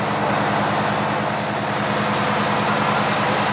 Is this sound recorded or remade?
recorded